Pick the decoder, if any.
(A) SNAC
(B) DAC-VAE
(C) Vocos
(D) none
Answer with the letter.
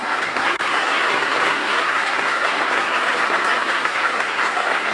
A